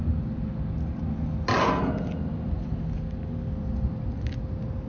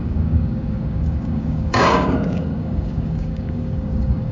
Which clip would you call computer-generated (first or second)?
second